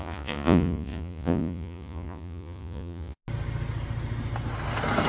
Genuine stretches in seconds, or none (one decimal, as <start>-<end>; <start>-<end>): 3.2-5.1